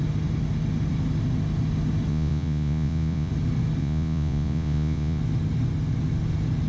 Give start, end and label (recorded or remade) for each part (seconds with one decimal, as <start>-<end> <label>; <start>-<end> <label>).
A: 0.0-2.1 recorded; 2.1-3.3 remade; 3.3-3.8 recorded; 3.8-5.2 remade; 5.2-6.7 recorded